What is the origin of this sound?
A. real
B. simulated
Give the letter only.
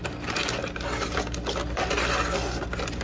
A